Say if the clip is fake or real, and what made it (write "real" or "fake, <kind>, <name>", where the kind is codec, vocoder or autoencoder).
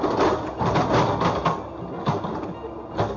real